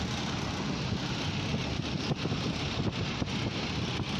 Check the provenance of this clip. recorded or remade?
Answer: recorded